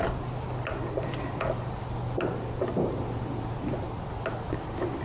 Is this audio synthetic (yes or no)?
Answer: no